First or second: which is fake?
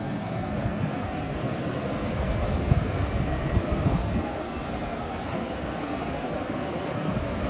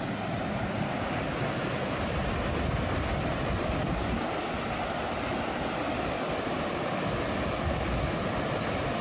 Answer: first